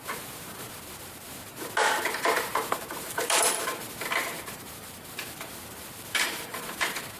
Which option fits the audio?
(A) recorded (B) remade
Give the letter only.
B